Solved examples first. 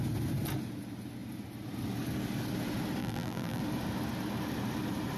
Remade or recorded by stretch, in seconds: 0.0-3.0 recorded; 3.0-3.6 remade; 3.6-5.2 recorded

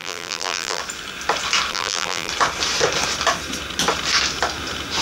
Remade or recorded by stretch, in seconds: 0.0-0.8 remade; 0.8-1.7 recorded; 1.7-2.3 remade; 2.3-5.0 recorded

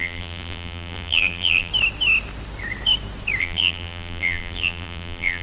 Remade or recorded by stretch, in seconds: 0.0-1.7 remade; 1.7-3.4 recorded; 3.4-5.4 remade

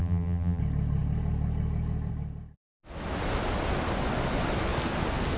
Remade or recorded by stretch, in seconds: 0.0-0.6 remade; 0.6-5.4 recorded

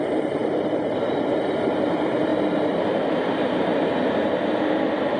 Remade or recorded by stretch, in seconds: 0.0-2.3 remade; 2.3-2.8 recorded; 2.8-3.7 remade; 3.7-5.2 recorded